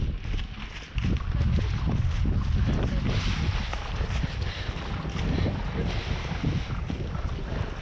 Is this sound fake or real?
real